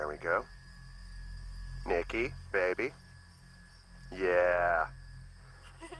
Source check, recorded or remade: recorded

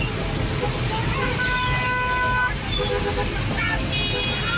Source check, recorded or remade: recorded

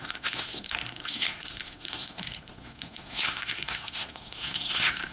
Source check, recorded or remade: remade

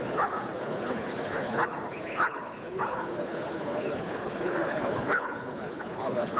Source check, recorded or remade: remade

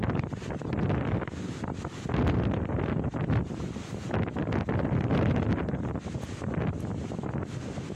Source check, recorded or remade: recorded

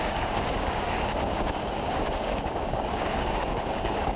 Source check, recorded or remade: remade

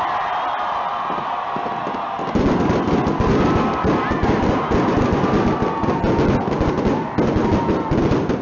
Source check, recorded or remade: recorded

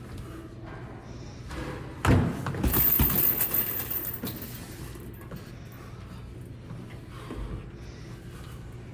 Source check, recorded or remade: recorded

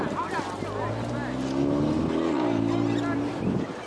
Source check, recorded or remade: recorded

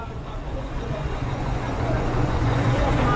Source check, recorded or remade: remade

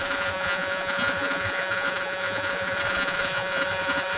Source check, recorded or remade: remade